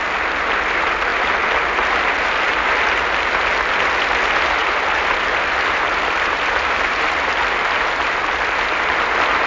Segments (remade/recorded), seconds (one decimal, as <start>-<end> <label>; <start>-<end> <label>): 0.0-4.6 recorded; 4.6-6.5 remade; 6.5-9.5 recorded